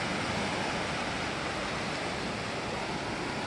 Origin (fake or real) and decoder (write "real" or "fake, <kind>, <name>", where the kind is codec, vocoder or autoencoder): real